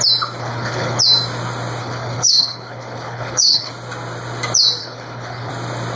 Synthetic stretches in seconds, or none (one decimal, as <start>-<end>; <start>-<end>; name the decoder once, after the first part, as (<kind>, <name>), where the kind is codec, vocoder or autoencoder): 0.4-1.0 (codec, HILCodec); 1.8-3.7; 4.8-5.5